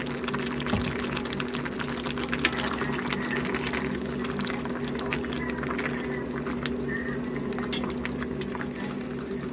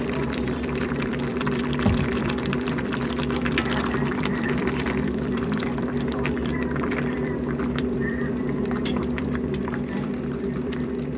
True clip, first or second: first